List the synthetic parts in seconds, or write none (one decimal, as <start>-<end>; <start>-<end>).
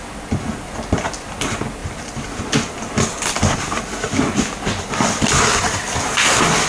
none